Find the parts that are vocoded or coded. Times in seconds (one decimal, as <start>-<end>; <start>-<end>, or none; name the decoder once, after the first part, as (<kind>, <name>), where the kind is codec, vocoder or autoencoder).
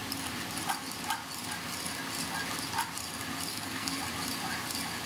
3.5-4.0 (codec, SNAC)